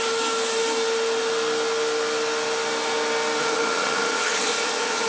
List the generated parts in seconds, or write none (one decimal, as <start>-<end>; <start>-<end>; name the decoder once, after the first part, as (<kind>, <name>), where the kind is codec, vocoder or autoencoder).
3.4-5.1 (vocoder, HiFi-GAN)